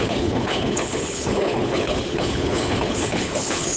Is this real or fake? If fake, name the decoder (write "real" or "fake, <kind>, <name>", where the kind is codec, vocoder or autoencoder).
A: fake, codec, HILCodec